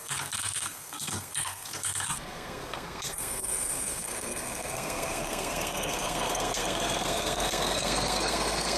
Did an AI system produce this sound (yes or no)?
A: yes